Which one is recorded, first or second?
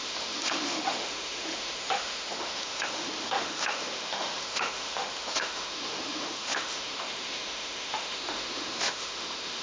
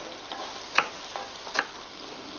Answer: second